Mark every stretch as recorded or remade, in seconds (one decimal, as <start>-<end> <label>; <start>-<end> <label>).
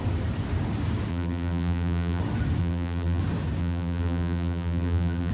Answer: 0.0-1.1 recorded; 1.1-2.2 remade; 2.2-2.6 recorded; 2.6-3.2 remade; 3.2-3.6 recorded; 3.6-5.3 remade